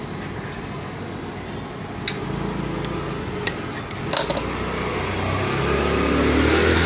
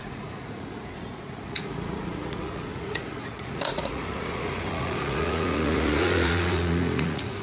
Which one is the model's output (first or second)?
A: second